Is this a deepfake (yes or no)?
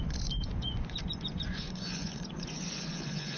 yes